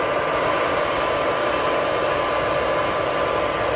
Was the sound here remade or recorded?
recorded